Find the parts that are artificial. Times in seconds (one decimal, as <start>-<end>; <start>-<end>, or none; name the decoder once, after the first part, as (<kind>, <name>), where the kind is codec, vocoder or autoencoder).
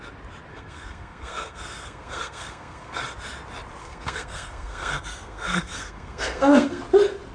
0.5-3.0 (codec, SNAC); 3.8-6.8